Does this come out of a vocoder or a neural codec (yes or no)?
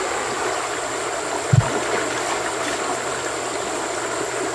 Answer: no